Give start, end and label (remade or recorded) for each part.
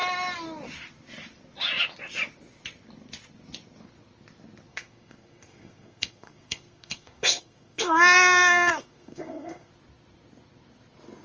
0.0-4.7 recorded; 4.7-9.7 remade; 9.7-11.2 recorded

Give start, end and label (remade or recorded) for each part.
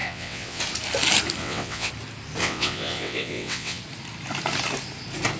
0.0-0.6 remade; 0.6-1.4 recorded; 1.4-1.9 remade; 1.9-2.4 recorded; 2.4-3.8 remade; 3.8-5.4 recorded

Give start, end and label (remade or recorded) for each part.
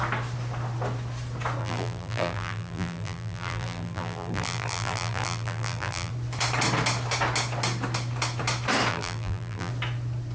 0.0-1.6 recorded; 1.6-6.1 remade; 6.1-8.9 recorded; 8.9-9.7 remade; 9.7-10.3 recorded